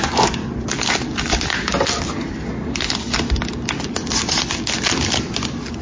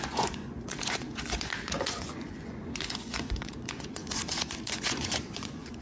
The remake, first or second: second